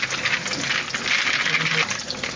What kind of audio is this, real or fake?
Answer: real